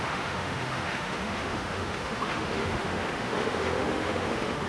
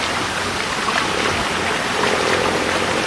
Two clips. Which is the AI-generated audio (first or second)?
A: first